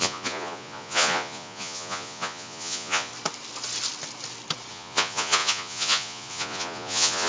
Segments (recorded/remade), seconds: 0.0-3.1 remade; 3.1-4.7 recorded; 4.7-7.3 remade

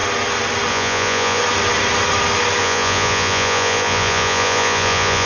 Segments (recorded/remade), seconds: 0.0-0.7 recorded; 0.7-1.4 remade; 1.4-2.6 recorded; 2.6-5.3 remade

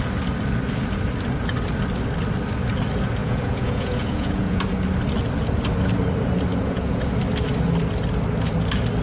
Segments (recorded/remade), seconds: 0.0-3.2 recorded; 3.2-4.6 remade; 4.6-6.5 recorded; 6.5-7.0 remade; 7.0-9.0 recorded

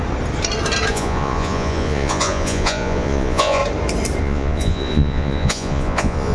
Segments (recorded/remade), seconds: 0.0-0.9 recorded; 0.9-3.6 remade; 3.6-4.2 recorded; 4.2-6.3 remade